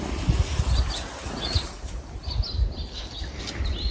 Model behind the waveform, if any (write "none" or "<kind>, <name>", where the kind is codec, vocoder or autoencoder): none